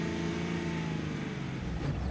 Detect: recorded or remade recorded